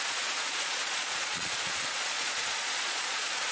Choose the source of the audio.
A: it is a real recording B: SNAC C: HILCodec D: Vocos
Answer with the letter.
D